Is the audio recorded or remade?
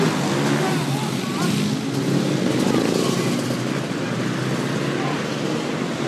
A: recorded